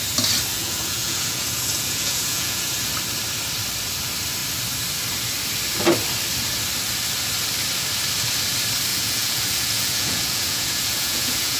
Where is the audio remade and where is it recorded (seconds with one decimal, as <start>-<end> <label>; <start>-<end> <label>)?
0.0-0.5 recorded; 0.5-2.9 remade; 2.9-8.9 recorded; 8.9-11.6 remade